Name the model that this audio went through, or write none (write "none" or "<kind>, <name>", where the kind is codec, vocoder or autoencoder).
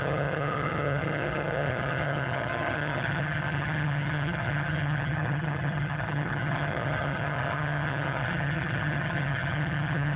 vocoder, HiFi-GAN